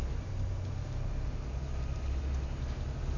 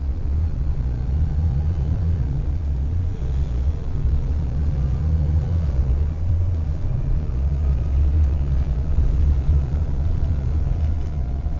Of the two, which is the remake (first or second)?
second